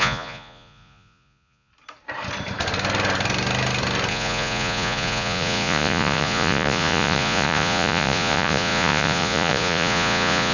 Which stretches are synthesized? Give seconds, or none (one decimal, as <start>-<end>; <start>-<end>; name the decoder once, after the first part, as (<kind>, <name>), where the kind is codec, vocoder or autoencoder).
0.0-1.7 (vocoder, Vocos); 4.1-10.5